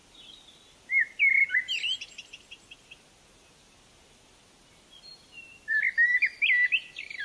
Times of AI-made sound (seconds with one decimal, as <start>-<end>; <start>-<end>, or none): none